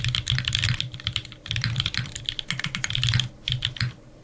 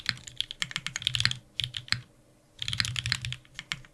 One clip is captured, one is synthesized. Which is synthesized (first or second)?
first